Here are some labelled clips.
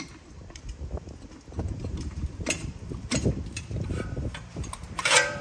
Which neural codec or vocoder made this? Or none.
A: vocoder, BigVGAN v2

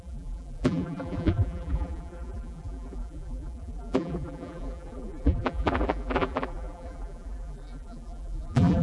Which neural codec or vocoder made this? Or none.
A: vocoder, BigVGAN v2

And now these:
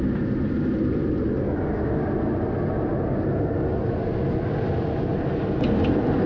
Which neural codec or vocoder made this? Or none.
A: none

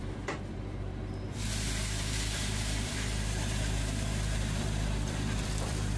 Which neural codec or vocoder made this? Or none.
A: vocoder, BigVGAN v2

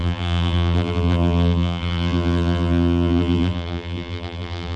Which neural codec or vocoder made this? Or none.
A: vocoder, BigVGAN v2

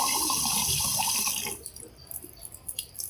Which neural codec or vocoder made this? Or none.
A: vocoder, BigVGAN v2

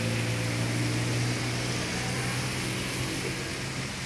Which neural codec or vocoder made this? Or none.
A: none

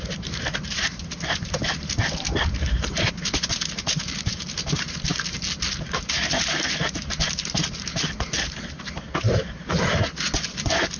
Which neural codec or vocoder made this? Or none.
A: vocoder, BigVGAN v2